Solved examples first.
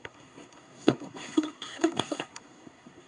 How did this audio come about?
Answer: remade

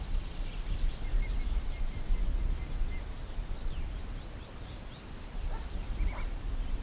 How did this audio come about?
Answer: recorded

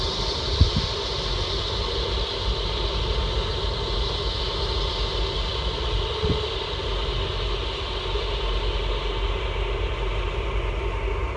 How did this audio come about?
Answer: recorded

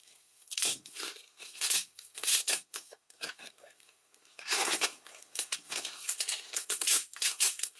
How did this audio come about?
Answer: remade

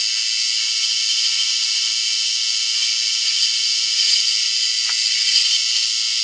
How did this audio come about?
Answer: recorded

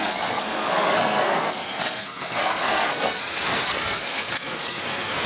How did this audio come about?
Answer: remade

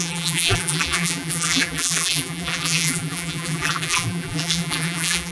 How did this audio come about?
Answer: remade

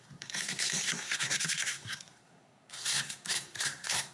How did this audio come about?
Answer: remade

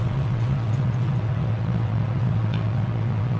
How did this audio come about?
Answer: remade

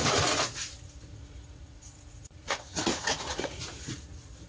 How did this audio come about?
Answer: remade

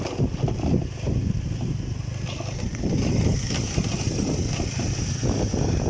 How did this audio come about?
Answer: recorded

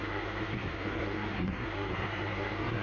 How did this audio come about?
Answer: remade